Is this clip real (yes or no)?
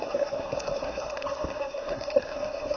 no